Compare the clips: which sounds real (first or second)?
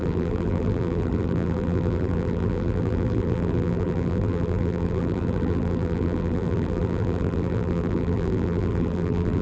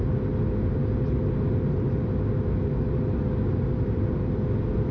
second